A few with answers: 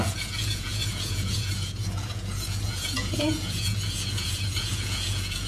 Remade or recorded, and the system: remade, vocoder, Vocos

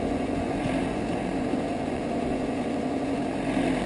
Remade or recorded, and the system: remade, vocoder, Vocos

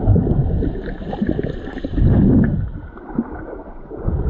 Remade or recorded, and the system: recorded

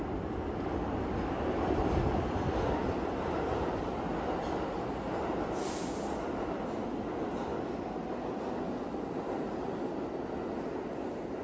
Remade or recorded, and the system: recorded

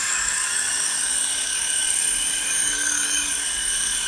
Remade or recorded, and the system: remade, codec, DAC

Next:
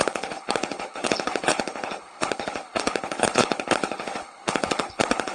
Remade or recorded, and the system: remade, codec, HILCodec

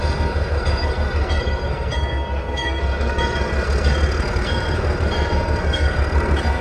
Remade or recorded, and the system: remade, codec, SNAC